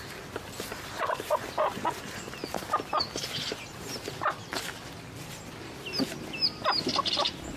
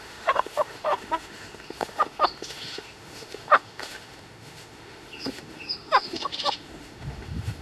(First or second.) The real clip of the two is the first